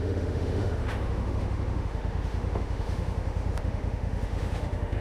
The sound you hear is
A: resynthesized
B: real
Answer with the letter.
A